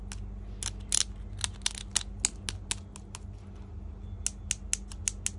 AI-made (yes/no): no